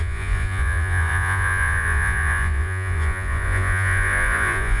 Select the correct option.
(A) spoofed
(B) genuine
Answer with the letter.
A